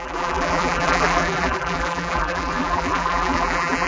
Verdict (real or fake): fake